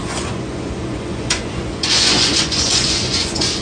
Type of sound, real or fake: fake